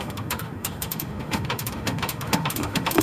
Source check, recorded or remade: remade